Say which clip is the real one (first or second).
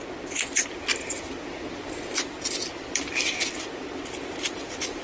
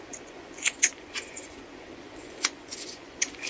first